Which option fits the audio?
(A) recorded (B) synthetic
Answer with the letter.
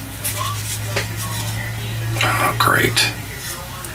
A